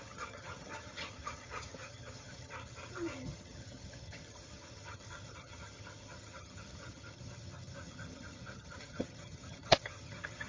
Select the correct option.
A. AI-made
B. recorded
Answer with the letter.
A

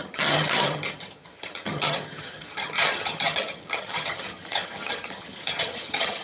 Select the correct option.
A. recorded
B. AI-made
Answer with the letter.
B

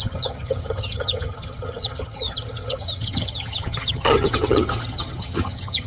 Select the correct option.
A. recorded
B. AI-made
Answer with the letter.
B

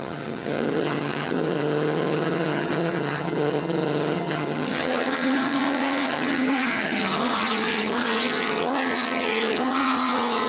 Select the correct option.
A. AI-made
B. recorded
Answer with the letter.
A